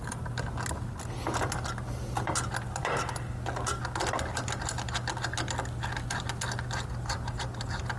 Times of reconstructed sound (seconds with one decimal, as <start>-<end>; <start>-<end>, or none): none

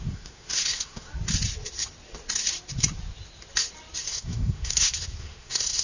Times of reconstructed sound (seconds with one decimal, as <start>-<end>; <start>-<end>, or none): 0.0-1.1; 4.1-5.8

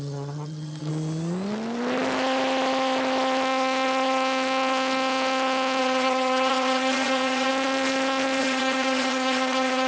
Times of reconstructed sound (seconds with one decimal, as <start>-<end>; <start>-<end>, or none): 0.0-0.9; 5.8-7.5; 8.4-9.9

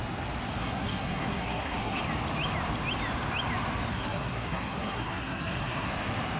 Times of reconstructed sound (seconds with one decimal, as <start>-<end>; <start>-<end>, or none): 0.6-2.0; 3.9-5.9

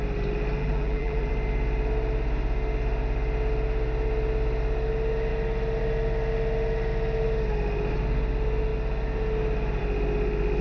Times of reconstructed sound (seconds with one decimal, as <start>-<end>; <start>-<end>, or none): 0.6-1.3

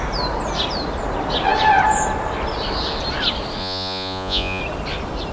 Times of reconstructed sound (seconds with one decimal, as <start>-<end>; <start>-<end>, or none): 3.6-4.6

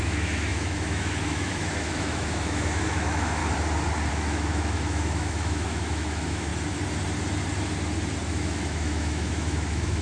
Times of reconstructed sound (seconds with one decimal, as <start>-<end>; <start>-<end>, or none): 0.0-3.4; 4.1-6.5; 8.3-10.0

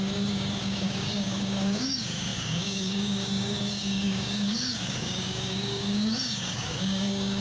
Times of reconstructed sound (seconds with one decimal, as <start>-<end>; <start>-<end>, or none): 0.0-7.4